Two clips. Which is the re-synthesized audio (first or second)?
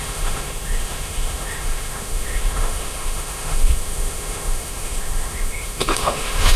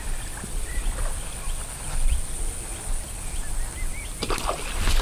first